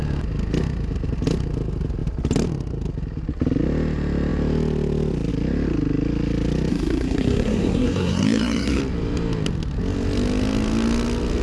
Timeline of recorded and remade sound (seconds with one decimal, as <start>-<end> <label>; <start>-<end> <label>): 0.0-6.7 recorded; 6.7-8.8 remade; 8.8-11.4 recorded